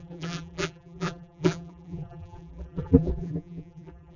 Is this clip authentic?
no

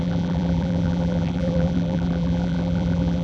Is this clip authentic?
no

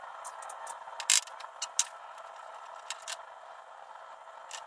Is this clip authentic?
yes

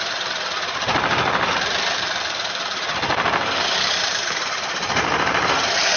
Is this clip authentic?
no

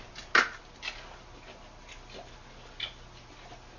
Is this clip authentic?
yes